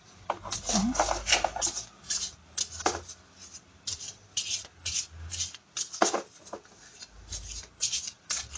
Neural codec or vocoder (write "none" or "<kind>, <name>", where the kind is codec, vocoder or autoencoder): none